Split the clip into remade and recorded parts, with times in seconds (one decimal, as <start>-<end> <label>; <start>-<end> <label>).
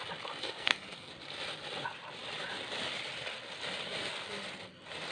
0.0-0.4 recorded; 0.4-1.1 remade; 1.1-5.1 recorded